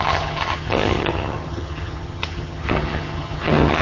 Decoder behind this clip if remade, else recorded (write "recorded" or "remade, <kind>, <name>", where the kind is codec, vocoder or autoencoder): remade, vocoder, HiFi-GAN